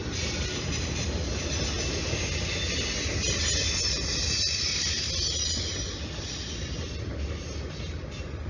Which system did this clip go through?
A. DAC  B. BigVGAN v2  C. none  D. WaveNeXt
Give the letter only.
C